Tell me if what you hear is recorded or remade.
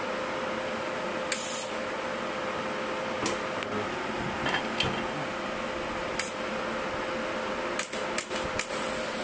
recorded